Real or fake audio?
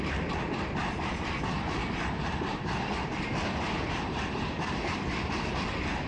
fake